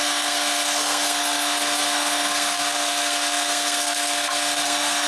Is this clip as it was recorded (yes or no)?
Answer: no